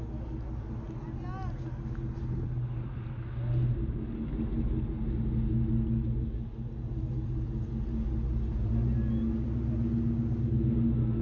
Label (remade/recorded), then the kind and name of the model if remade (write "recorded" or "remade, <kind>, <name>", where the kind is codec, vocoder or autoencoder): recorded